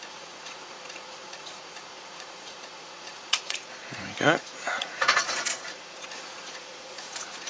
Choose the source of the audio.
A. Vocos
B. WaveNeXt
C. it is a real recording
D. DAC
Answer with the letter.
A